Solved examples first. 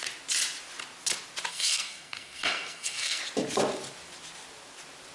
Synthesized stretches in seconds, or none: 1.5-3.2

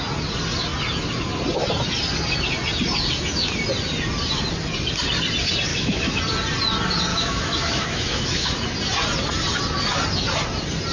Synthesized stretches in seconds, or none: 5.7-6.2; 7.1-8.5

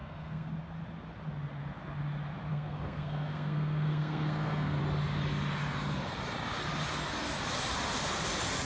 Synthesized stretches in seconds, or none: 0.0-0.5; 2.5-4.8

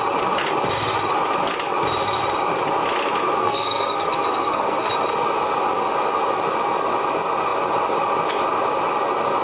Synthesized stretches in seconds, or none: 3.4-4.9